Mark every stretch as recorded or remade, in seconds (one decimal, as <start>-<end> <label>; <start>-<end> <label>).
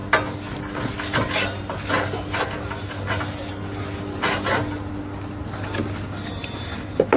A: 0.0-7.2 recorded